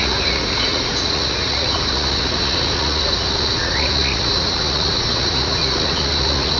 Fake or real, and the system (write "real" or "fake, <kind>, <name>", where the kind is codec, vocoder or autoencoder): fake, vocoder, Vocos